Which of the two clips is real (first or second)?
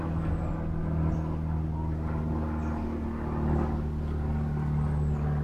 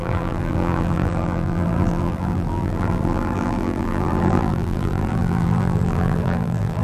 first